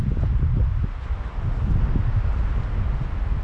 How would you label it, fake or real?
real